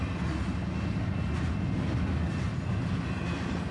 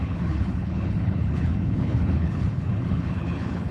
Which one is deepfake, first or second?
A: second